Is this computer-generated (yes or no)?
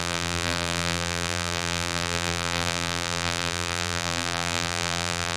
yes